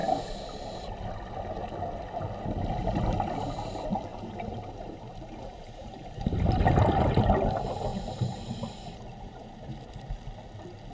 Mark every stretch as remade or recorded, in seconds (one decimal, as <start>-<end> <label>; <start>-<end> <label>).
0.0-4.1 recorded; 4.1-6.2 remade; 6.2-7.9 recorded; 7.9-9.9 remade; 9.9-10.9 recorded